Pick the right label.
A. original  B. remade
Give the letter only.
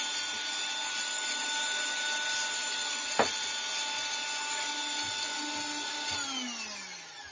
A